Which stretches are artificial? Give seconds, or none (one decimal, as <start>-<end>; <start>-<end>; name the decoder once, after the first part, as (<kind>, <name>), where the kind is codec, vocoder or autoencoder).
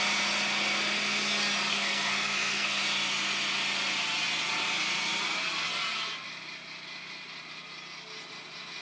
1.7-2.8 (codec, SNAC)